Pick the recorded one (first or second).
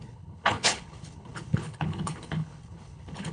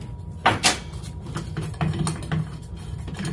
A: second